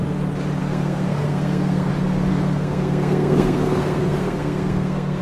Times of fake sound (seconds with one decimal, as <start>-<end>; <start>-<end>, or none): 0.6-1.9; 2.3-5.2